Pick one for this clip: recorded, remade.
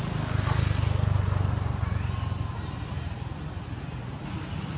recorded